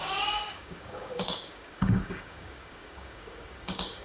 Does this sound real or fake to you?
fake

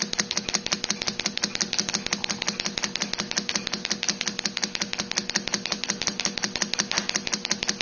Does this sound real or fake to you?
real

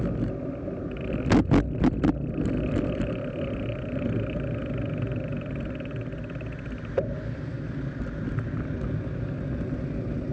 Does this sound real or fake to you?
real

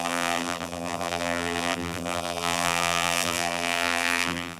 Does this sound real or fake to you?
fake